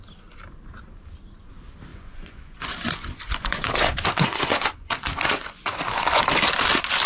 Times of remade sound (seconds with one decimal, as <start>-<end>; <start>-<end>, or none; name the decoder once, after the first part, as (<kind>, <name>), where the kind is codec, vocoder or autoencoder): 1.9-6.2 (vocoder, Vocos)